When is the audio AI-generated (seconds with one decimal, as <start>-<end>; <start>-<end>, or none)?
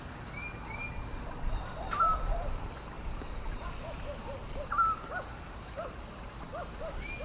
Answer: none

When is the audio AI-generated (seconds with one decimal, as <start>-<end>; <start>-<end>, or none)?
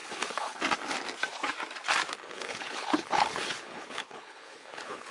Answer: 0.0-0.6; 2.2-5.1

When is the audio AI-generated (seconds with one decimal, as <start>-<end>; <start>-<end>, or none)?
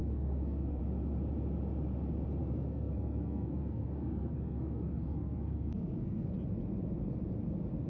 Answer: 0.0-0.8; 2.4-6.3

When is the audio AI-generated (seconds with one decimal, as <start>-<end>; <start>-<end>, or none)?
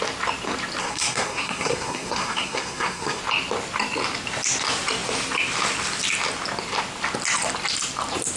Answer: 0.8-3.2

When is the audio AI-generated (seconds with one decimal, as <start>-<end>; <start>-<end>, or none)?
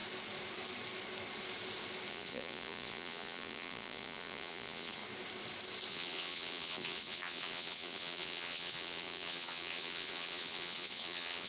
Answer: 2.1-5.0; 5.9-11.5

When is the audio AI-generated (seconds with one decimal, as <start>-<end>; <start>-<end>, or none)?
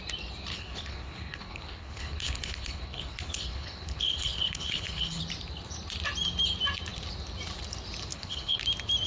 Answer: 0.5-5.2; 8.1-8.6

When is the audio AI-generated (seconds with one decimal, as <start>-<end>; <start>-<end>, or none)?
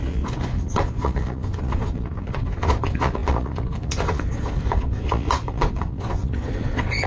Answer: 0.0-7.1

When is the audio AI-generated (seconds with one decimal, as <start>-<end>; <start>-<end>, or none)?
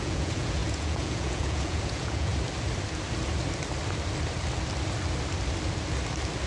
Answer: 0.0-2.3